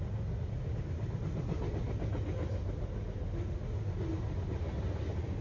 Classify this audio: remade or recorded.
recorded